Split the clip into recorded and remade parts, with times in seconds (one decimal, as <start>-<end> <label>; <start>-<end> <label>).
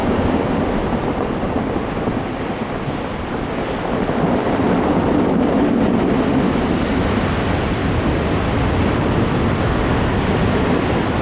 0.0-11.2 recorded